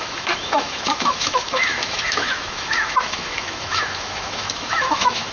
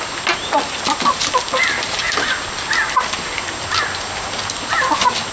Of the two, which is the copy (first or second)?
first